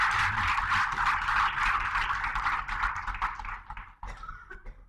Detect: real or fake real